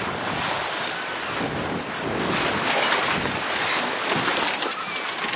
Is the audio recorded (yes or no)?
yes